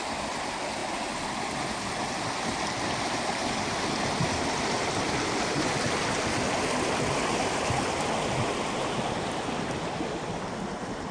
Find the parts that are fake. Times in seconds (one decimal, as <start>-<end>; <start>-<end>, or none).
none